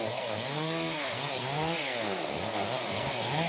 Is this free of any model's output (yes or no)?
no